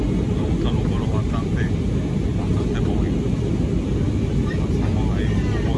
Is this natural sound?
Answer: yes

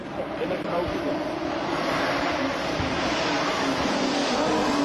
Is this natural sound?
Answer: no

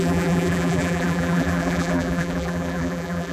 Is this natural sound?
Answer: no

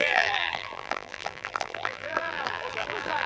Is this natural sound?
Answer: no